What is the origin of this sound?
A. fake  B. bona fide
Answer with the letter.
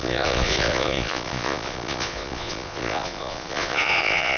A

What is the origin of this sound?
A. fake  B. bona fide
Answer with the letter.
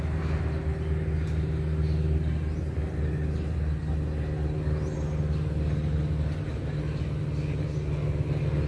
B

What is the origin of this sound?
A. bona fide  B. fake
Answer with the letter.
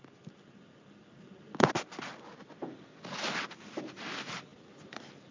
A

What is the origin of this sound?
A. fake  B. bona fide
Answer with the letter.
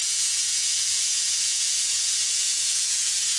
A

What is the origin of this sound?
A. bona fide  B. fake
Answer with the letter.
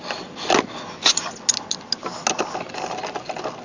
A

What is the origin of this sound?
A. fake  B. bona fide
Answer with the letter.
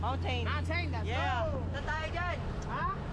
B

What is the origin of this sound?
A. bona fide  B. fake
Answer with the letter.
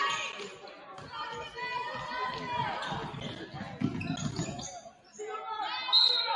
A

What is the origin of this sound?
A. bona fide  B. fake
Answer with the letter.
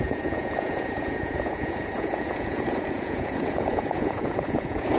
B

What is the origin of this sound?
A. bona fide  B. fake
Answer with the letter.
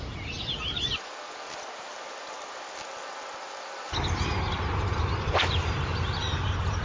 A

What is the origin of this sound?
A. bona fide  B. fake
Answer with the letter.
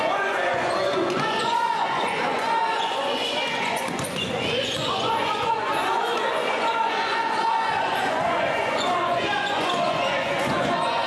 B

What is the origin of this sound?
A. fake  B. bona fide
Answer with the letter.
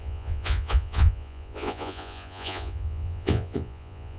A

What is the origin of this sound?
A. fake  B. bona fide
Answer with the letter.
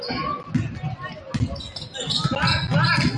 B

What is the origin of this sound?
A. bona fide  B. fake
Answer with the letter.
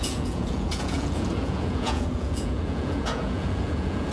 B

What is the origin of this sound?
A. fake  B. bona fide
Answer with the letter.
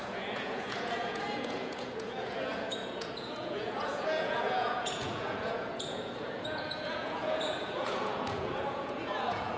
A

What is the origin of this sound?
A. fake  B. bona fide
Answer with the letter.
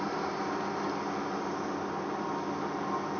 B